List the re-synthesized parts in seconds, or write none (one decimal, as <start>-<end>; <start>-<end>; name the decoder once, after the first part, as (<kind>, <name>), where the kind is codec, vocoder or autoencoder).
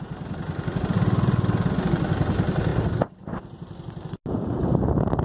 none